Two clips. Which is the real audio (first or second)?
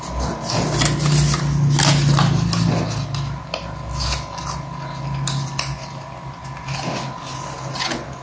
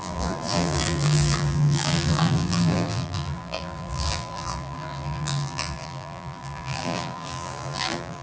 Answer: first